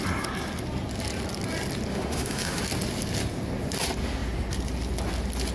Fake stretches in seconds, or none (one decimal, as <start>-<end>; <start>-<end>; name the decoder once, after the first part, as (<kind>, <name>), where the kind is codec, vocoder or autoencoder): 1.9-2.6 (autoencoder, DAC-VAE)